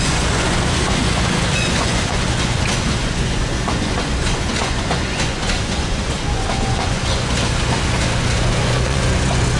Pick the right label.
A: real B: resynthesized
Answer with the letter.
B